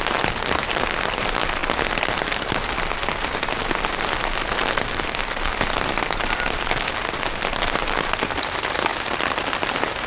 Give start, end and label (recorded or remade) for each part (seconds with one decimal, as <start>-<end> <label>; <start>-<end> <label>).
0.0-10.1 recorded

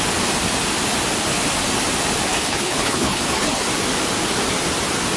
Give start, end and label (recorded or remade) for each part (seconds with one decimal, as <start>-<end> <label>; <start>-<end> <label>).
0.0-2.3 recorded; 2.3-3.6 remade; 3.6-5.2 recorded

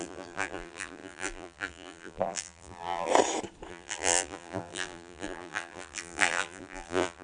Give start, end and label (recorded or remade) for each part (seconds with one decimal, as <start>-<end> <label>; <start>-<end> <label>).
0.0-3.1 remade; 3.1-3.7 recorded; 3.7-7.2 remade

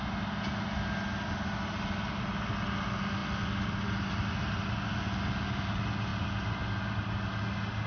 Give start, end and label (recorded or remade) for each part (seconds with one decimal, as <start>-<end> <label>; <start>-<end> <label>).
0.0-7.9 recorded

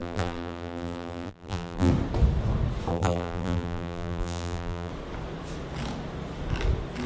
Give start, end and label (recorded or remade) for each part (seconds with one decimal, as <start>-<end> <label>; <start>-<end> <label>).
0.0-1.9 remade; 1.9-2.9 recorded; 2.9-4.9 remade; 4.9-7.1 recorded